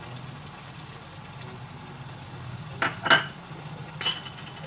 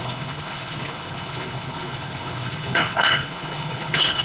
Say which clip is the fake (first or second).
second